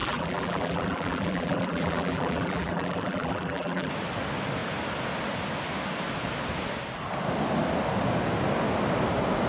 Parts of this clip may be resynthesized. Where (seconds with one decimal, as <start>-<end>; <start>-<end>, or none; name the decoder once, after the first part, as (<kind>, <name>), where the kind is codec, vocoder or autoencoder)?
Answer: 0.0-3.9 (vocoder, BigVGAN v2)